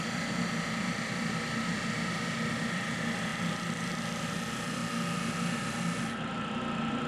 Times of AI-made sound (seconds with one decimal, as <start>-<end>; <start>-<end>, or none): 0.0-4.8